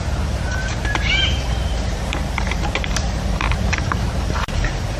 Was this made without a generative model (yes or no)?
no